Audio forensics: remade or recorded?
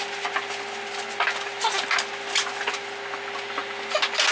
recorded